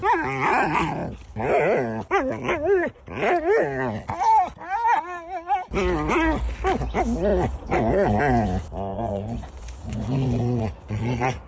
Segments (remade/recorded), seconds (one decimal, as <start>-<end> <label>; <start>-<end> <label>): 0.0-7.3 recorded; 7.3-8.2 remade; 8.2-8.9 recorded; 8.9-11.5 remade